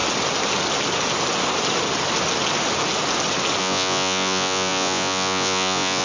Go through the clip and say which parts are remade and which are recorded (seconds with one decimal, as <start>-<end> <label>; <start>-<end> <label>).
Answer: 0.0-3.6 recorded; 3.6-6.0 remade